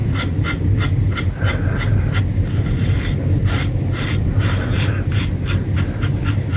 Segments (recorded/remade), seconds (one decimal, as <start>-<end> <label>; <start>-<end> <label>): 0.0-3.4 recorded; 3.4-4.4 remade; 4.4-6.6 recorded